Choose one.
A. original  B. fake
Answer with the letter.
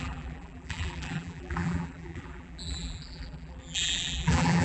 B